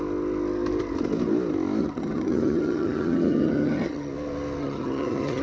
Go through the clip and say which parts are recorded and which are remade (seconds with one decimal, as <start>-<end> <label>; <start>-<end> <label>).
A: 0.0-1.8 recorded; 1.8-4.1 remade; 4.1-4.6 recorded; 4.6-5.4 remade